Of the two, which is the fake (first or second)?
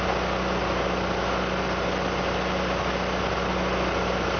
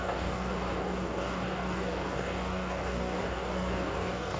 second